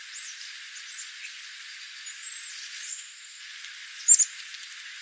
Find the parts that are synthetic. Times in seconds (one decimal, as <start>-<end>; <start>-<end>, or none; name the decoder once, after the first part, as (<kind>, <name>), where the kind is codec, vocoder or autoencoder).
2.9-3.4 (codec, SNAC)

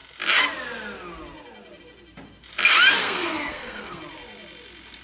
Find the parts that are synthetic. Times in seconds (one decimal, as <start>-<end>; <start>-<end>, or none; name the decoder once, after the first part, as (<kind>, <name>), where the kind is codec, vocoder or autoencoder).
3.0-4.0 (codec, SNAC)

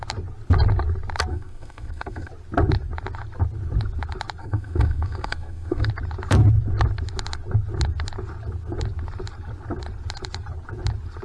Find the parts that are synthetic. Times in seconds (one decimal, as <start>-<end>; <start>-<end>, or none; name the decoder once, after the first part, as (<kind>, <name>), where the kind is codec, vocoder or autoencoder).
1.3-2.3 (codec, SNAC); 4.4-5.9

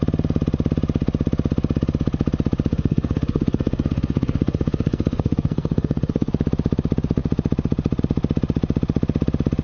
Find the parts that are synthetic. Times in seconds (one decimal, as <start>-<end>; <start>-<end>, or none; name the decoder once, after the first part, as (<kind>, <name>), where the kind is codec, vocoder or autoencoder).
2.7-6.3 (codec, SNAC)

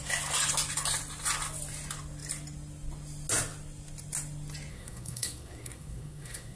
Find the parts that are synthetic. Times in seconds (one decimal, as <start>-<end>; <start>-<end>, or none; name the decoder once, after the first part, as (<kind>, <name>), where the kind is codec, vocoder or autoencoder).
4.7-6.6 (codec, SNAC)

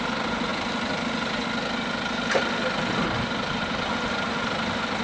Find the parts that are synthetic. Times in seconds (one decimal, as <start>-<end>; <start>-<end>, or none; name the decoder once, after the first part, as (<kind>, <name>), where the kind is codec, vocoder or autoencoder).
none

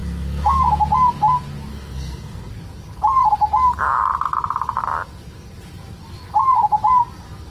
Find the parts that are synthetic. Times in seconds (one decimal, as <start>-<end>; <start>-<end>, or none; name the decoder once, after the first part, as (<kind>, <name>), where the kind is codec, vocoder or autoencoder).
0.0-0.6 (codec, SNAC); 1.7-2.5